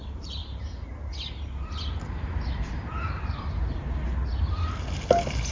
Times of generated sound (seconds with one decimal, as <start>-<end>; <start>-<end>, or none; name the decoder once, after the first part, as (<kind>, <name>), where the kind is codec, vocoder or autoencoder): 0.0-0.4 (vocoder, BigVGAN v2); 1.3-4.3